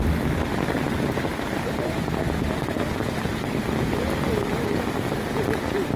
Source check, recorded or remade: recorded